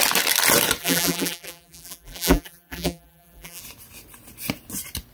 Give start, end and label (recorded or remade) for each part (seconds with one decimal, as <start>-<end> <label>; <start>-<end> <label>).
0.0-0.8 recorded; 0.8-3.6 remade; 3.6-5.1 recorded